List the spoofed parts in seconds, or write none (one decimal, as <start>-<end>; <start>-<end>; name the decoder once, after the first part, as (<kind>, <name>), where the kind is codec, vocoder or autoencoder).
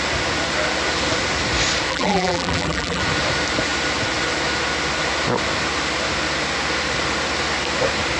1.9-3.0 (vocoder, BigVGAN v2)